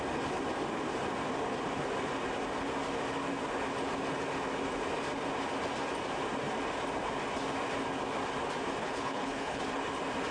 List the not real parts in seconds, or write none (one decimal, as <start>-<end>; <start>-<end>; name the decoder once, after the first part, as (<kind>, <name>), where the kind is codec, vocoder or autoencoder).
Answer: 8.8-9.6 (codec, HILCodec)